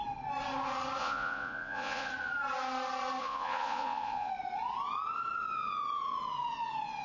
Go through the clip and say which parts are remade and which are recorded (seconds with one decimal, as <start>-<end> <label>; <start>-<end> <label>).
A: 0.0-1.0 recorded; 1.0-2.1 remade; 2.1-3.2 recorded; 3.2-4.3 remade; 4.3-7.0 recorded